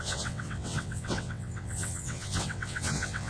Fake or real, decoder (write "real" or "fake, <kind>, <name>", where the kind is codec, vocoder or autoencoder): fake, vocoder, WaveNeXt